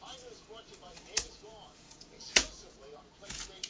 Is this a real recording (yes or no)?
no